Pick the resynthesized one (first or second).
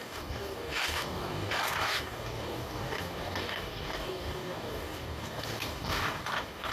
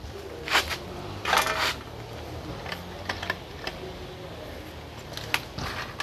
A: first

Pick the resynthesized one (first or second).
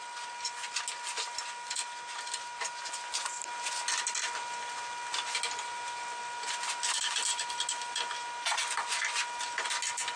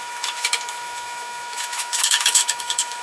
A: second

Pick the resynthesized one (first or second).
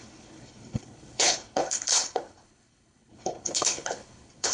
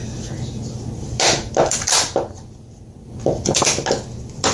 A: first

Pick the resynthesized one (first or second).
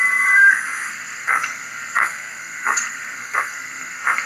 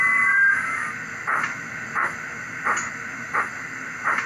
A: first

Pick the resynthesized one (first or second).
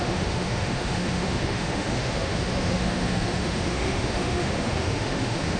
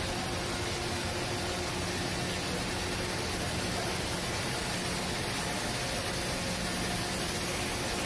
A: first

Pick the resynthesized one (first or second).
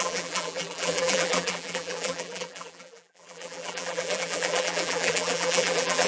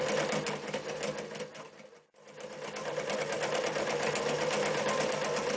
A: first